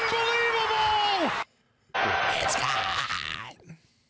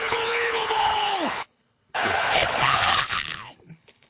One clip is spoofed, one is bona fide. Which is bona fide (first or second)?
first